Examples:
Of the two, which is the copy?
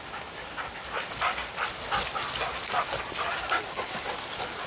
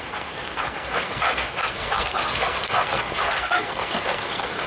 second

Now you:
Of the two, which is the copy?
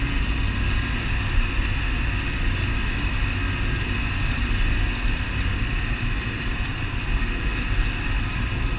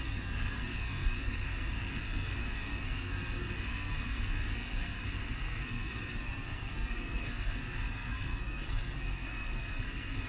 second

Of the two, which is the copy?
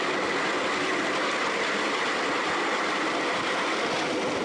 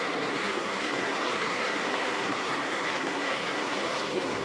second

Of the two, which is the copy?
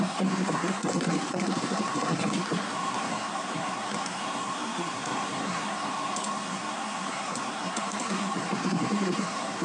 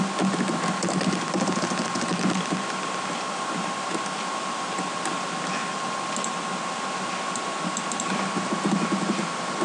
first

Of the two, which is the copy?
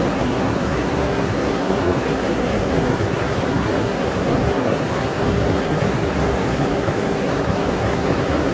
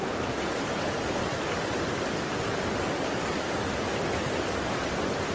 first